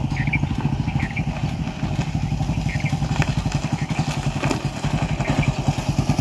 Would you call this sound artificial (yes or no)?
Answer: no